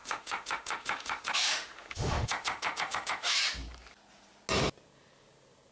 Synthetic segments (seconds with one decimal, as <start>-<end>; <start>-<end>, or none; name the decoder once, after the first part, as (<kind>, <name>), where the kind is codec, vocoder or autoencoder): 0.0-3.4 (autoencoder, DAC-VAE)